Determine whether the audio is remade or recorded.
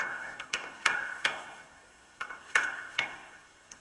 remade